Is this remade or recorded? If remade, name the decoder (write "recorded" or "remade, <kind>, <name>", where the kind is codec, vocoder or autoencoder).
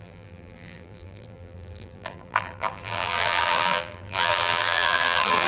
remade, vocoder, BigVGAN v2